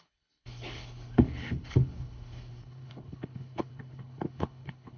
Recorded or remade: remade